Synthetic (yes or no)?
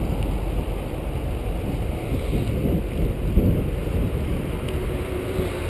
no